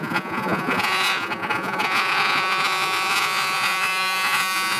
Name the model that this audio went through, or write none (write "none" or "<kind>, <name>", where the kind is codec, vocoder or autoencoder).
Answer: vocoder, Vocos